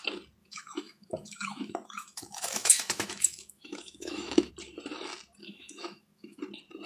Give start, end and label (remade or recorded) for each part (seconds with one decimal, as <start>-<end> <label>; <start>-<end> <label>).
0.0-0.4 recorded; 0.4-4.5 remade; 4.5-5.4 recorded; 5.4-6.4 remade; 6.4-6.9 recorded